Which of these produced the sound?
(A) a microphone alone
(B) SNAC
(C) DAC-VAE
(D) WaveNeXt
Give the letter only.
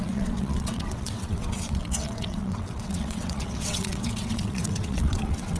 D